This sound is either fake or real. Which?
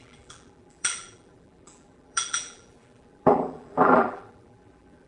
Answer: fake